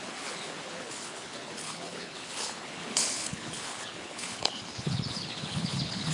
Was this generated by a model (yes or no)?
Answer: yes